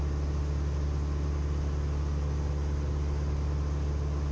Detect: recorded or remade recorded